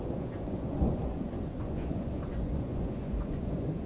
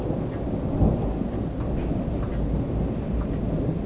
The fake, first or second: first